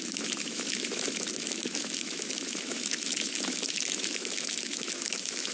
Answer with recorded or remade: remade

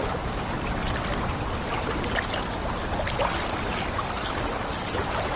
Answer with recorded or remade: recorded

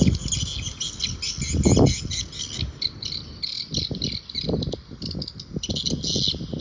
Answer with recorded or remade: recorded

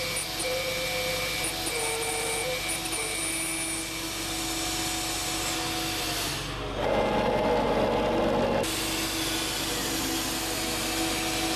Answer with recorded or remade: recorded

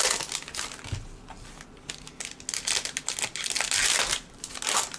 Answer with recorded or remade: recorded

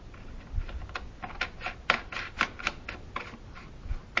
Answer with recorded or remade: recorded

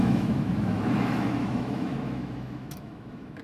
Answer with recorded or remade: remade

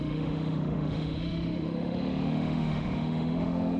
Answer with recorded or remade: remade